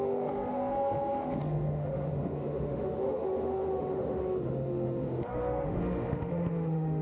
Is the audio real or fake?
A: fake